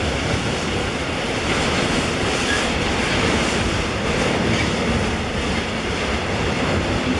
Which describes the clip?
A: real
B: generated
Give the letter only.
A